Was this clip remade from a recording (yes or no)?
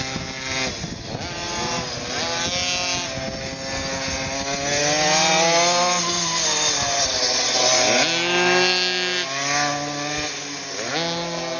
no